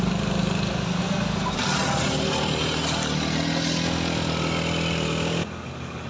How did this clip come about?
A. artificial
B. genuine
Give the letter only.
B